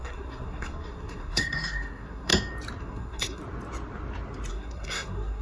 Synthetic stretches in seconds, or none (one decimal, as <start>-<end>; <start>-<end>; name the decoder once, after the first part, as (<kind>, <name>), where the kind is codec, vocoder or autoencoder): 0.0-2.3 (codec, SNAC); 2.8-3.4; 4.5-5.4